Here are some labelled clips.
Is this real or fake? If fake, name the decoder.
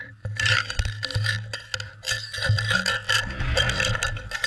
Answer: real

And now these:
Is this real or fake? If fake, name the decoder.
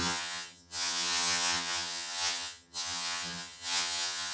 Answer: fake, vocoder, HiFi-GAN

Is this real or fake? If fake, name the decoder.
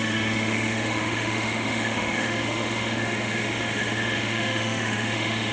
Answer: fake, autoencoder, DAC-VAE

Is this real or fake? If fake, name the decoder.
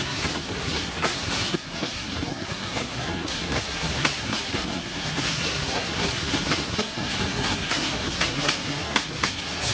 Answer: fake, codec, SNAC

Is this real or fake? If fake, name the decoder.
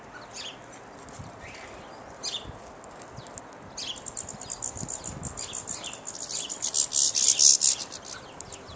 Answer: real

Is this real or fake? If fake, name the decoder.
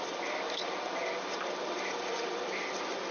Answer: real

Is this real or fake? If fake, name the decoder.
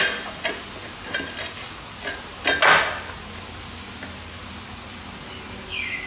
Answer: real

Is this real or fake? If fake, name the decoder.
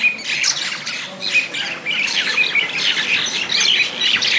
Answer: real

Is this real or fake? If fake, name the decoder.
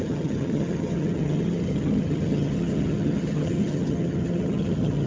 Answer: fake, vocoder, HiFi-GAN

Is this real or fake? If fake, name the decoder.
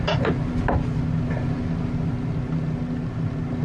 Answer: real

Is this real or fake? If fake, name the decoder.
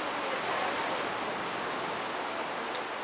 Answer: real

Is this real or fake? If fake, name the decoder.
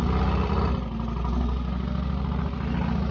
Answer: real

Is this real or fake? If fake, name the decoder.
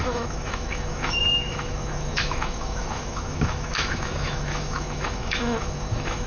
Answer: fake, autoencoder, DAC-VAE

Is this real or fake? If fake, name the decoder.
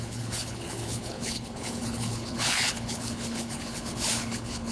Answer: fake, codec, HILCodec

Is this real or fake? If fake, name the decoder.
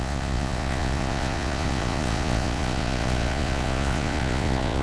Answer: fake, vocoder, Vocos